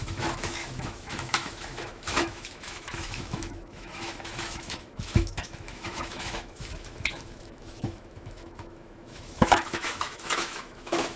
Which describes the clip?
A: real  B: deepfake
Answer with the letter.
B